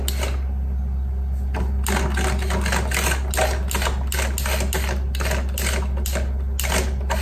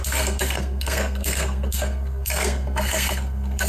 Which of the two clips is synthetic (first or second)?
second